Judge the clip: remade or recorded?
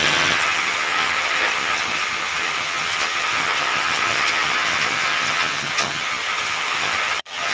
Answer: remade